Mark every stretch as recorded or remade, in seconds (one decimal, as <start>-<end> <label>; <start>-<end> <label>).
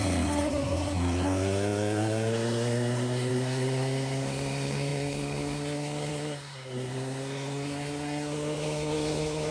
0.0-9.5 remade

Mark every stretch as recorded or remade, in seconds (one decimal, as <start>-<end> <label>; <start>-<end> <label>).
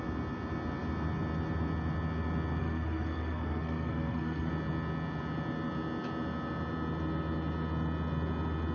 0.0-2.6 recorded; 2.6-4.5 remade; 4.5-8.7 recorded